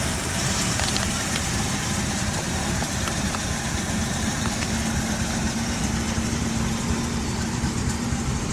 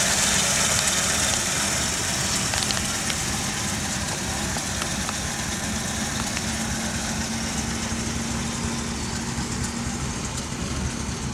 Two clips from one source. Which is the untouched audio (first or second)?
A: second